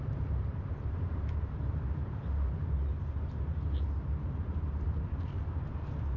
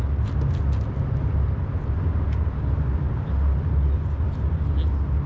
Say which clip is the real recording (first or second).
second